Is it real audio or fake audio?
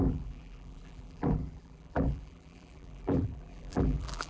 fake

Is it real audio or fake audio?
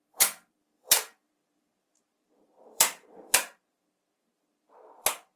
fake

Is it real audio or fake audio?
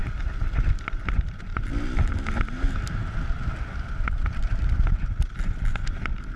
real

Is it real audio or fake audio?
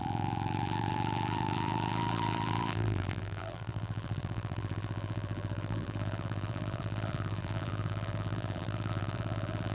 fake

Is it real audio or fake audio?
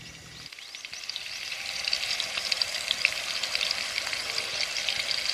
fake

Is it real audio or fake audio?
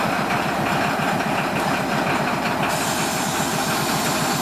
real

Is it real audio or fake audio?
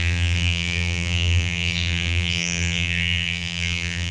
fake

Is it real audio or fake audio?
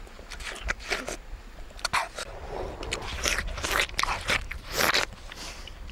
real